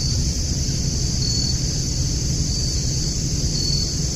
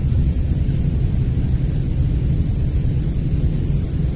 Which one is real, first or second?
first